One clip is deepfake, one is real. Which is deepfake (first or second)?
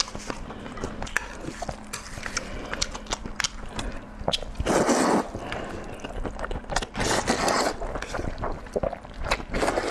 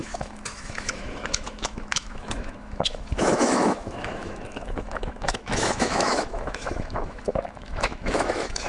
second